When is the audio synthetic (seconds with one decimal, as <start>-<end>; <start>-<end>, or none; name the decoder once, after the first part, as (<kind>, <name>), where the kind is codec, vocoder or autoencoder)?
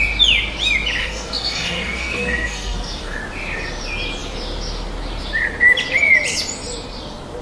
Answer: 1.0-3.2 (codec, SNAC)